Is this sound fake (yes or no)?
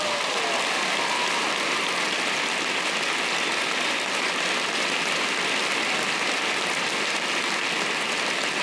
no